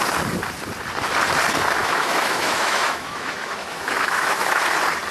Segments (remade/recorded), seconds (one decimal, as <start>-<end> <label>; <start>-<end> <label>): 0.0-1.8 recorded; 1.8-4.6 remade; 4.6-5.1 recorded